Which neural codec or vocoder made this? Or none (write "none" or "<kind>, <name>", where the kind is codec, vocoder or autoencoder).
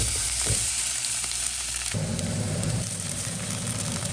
vocoder, BigVGAN v2